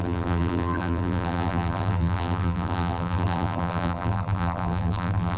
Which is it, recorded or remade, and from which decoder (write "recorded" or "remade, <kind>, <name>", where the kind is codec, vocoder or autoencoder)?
remade, vocoder, BigVGAN v2